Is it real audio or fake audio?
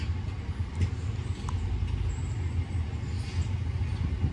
real